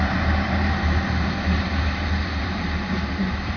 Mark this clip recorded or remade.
remade